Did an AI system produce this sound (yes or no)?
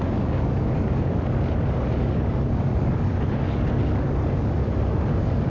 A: yes